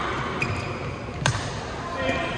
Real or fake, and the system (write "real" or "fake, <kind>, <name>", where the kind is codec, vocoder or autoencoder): fake, vocoder, BigVGAN v2